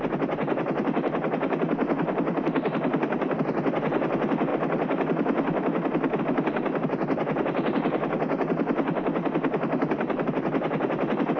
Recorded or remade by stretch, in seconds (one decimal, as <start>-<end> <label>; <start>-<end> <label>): 0.0-11.4 recorded